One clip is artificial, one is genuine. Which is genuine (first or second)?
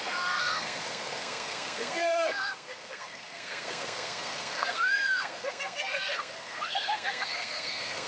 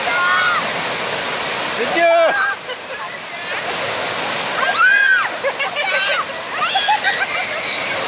second